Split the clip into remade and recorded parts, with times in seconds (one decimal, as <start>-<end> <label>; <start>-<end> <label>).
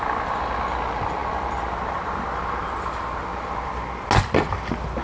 0.0-5.0 recorded